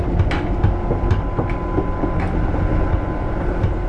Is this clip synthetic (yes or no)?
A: no